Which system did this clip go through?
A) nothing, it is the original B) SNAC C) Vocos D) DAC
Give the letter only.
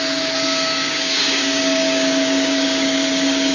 D